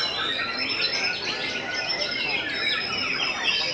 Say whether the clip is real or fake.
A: real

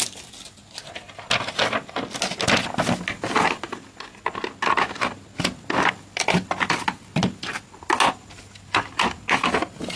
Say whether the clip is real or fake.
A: real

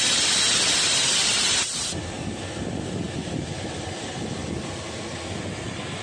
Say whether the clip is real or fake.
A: real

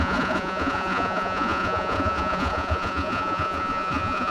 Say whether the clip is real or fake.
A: fake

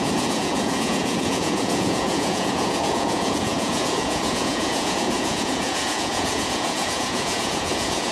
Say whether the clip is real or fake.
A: fake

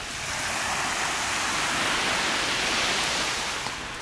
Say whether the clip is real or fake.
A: real